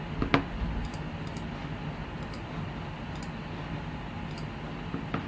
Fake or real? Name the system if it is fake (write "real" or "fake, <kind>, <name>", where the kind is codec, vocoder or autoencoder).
real